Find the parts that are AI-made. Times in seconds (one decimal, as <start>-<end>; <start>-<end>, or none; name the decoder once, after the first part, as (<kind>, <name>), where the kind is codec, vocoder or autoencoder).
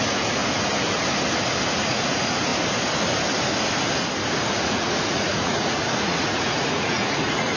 0.0-0.4 (vocoder, Vocos); 1.8-2.5; 4.5-7.6